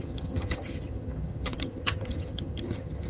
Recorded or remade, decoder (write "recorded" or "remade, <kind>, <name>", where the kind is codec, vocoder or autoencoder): remade, vocoder, HiFi-GAN